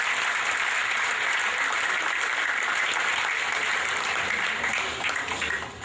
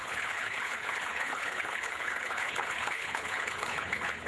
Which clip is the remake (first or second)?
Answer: second